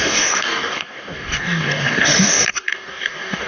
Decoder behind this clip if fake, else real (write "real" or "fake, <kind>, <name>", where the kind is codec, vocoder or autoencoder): fake, codec, DAC